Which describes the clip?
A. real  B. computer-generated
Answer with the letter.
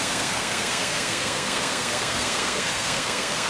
B